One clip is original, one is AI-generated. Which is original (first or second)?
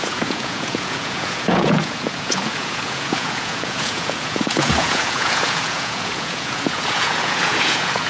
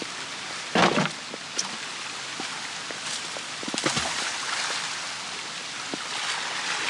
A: second